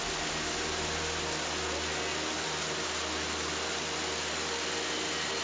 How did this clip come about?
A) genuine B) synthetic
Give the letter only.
A